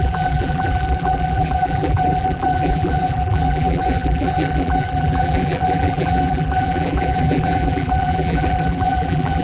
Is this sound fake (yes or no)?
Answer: yes